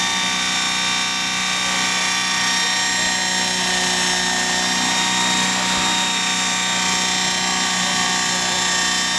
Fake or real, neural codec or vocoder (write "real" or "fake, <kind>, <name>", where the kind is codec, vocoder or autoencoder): real